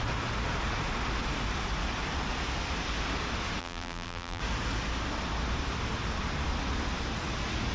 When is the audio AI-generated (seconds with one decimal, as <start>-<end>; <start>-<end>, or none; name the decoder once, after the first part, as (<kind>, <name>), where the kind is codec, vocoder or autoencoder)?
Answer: 3.6-4.4 (vocoder, BigVGAN v2)